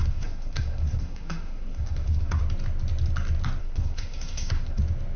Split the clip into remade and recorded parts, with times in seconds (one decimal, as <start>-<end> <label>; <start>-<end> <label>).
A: 0.0-2.4 remade; 2.4-3.6 recorded; 3.6-4.8 remade; 4.8-5.2 recorded